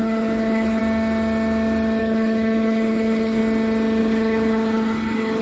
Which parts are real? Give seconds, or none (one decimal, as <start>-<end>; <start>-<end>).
0.8-2.0; 3.4-4.0